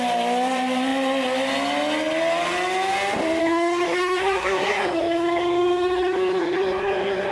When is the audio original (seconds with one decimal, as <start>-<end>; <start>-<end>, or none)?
0.0-3.4